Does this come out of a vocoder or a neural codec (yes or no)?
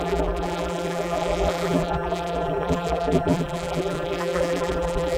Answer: yes